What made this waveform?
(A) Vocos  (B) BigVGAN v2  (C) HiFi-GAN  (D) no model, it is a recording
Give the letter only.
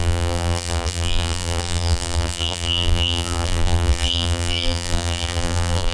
B